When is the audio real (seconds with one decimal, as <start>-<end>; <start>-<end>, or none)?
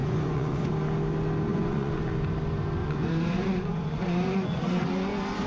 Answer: 0.7-1.5; 2.0-2.8; 4.9-5.5